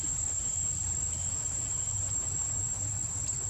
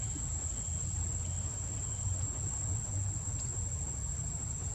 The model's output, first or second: first